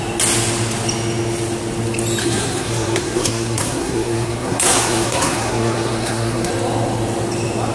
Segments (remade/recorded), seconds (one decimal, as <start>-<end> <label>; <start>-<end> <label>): 0.0-2.2 recorded; 2.2-6.5 remade; 6.5-7.7 recorded

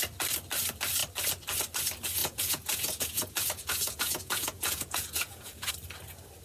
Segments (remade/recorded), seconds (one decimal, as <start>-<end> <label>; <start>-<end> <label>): 0.0-2.2 recorded; 2.2-5.7 remade; 5.7-6.4 recorded